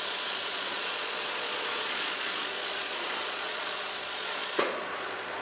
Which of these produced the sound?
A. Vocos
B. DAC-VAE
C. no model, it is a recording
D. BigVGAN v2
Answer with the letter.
A